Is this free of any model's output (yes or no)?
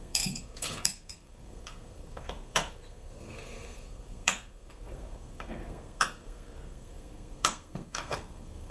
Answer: no